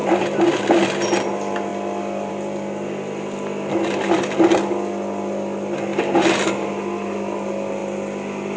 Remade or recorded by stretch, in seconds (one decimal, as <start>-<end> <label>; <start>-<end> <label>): 0.0-0.6 remade; 0.6-1.7 recorded; 1.7-2.3 remade; 2.3-5.9 recorded; 5.9-6.7 remade; 6.7-8.6 recorded